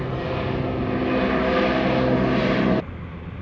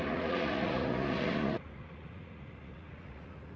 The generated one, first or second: second